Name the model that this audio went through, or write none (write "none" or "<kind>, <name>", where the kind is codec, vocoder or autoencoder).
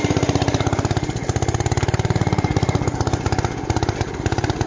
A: vocoder, BigVGAN v2